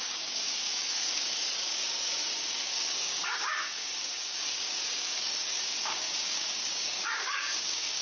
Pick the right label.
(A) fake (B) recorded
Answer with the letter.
A